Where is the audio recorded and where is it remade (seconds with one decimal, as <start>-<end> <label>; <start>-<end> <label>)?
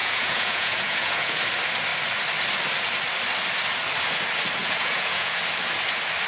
0.0-1.4 remade; 1.4-4.6 recorded; 4.6-5.4 remade; 5.4-6.3 recorded